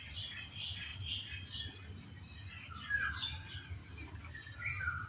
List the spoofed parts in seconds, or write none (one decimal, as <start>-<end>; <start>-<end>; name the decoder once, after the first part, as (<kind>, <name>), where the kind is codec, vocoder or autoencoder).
none